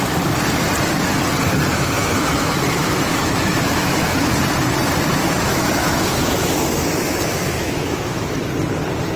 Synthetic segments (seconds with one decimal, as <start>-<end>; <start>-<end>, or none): 1.7-4.3; 5.2-8.5